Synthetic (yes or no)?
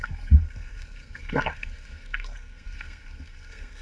yes